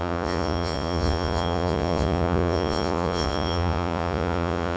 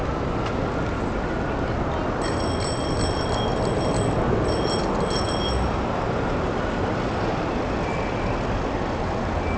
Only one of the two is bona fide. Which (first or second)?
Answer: second